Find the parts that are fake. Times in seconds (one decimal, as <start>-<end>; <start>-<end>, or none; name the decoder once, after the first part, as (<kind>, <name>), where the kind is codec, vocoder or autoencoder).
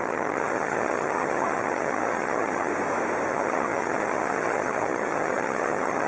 0.0-2.7 (vocoder, HiFi-GAN); 3.3-6.1